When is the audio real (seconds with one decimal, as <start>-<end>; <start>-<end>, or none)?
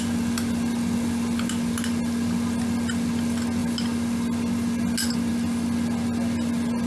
0.0-6.9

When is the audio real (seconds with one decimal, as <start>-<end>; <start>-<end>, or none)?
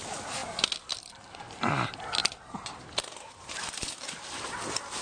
0.0-5.0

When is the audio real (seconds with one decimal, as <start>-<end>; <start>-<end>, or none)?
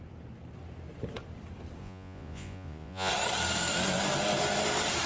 0.0-1.8; 3.1-5.1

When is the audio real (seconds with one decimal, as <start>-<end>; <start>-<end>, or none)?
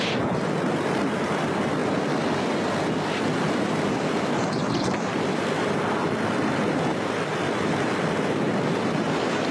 none